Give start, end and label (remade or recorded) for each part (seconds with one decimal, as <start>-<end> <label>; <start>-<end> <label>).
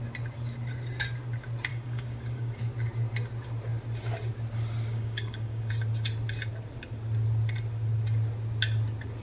0.0-1.7 recorded; 1.7-2.6 remade; 2.6-4.9 recorded; 4.9-5.7 remade; 5.7-9.2 recorded